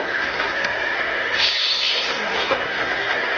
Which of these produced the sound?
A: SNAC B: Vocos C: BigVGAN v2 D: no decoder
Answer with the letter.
A